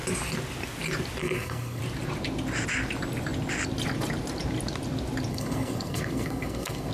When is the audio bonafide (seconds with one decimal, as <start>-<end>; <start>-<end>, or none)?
0.0-1.2; 1.8-5.3